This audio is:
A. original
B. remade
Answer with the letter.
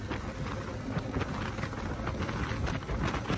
A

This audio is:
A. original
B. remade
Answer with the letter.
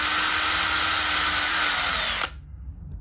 A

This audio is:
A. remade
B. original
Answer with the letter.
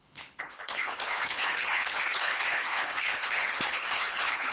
A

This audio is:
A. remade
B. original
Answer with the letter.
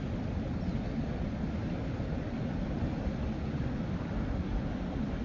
B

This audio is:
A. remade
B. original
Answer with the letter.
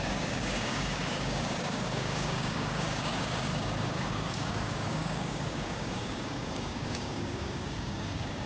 A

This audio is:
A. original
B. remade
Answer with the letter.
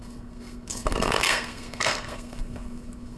B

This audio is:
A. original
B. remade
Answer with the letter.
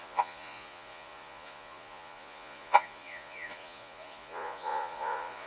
B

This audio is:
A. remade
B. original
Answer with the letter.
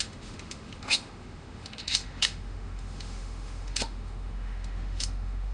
A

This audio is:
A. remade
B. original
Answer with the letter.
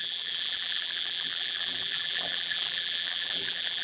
A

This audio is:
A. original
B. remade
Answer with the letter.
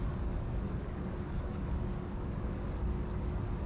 B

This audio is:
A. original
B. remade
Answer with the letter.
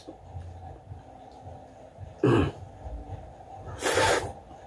A